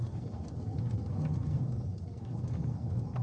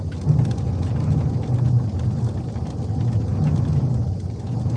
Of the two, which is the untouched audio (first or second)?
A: second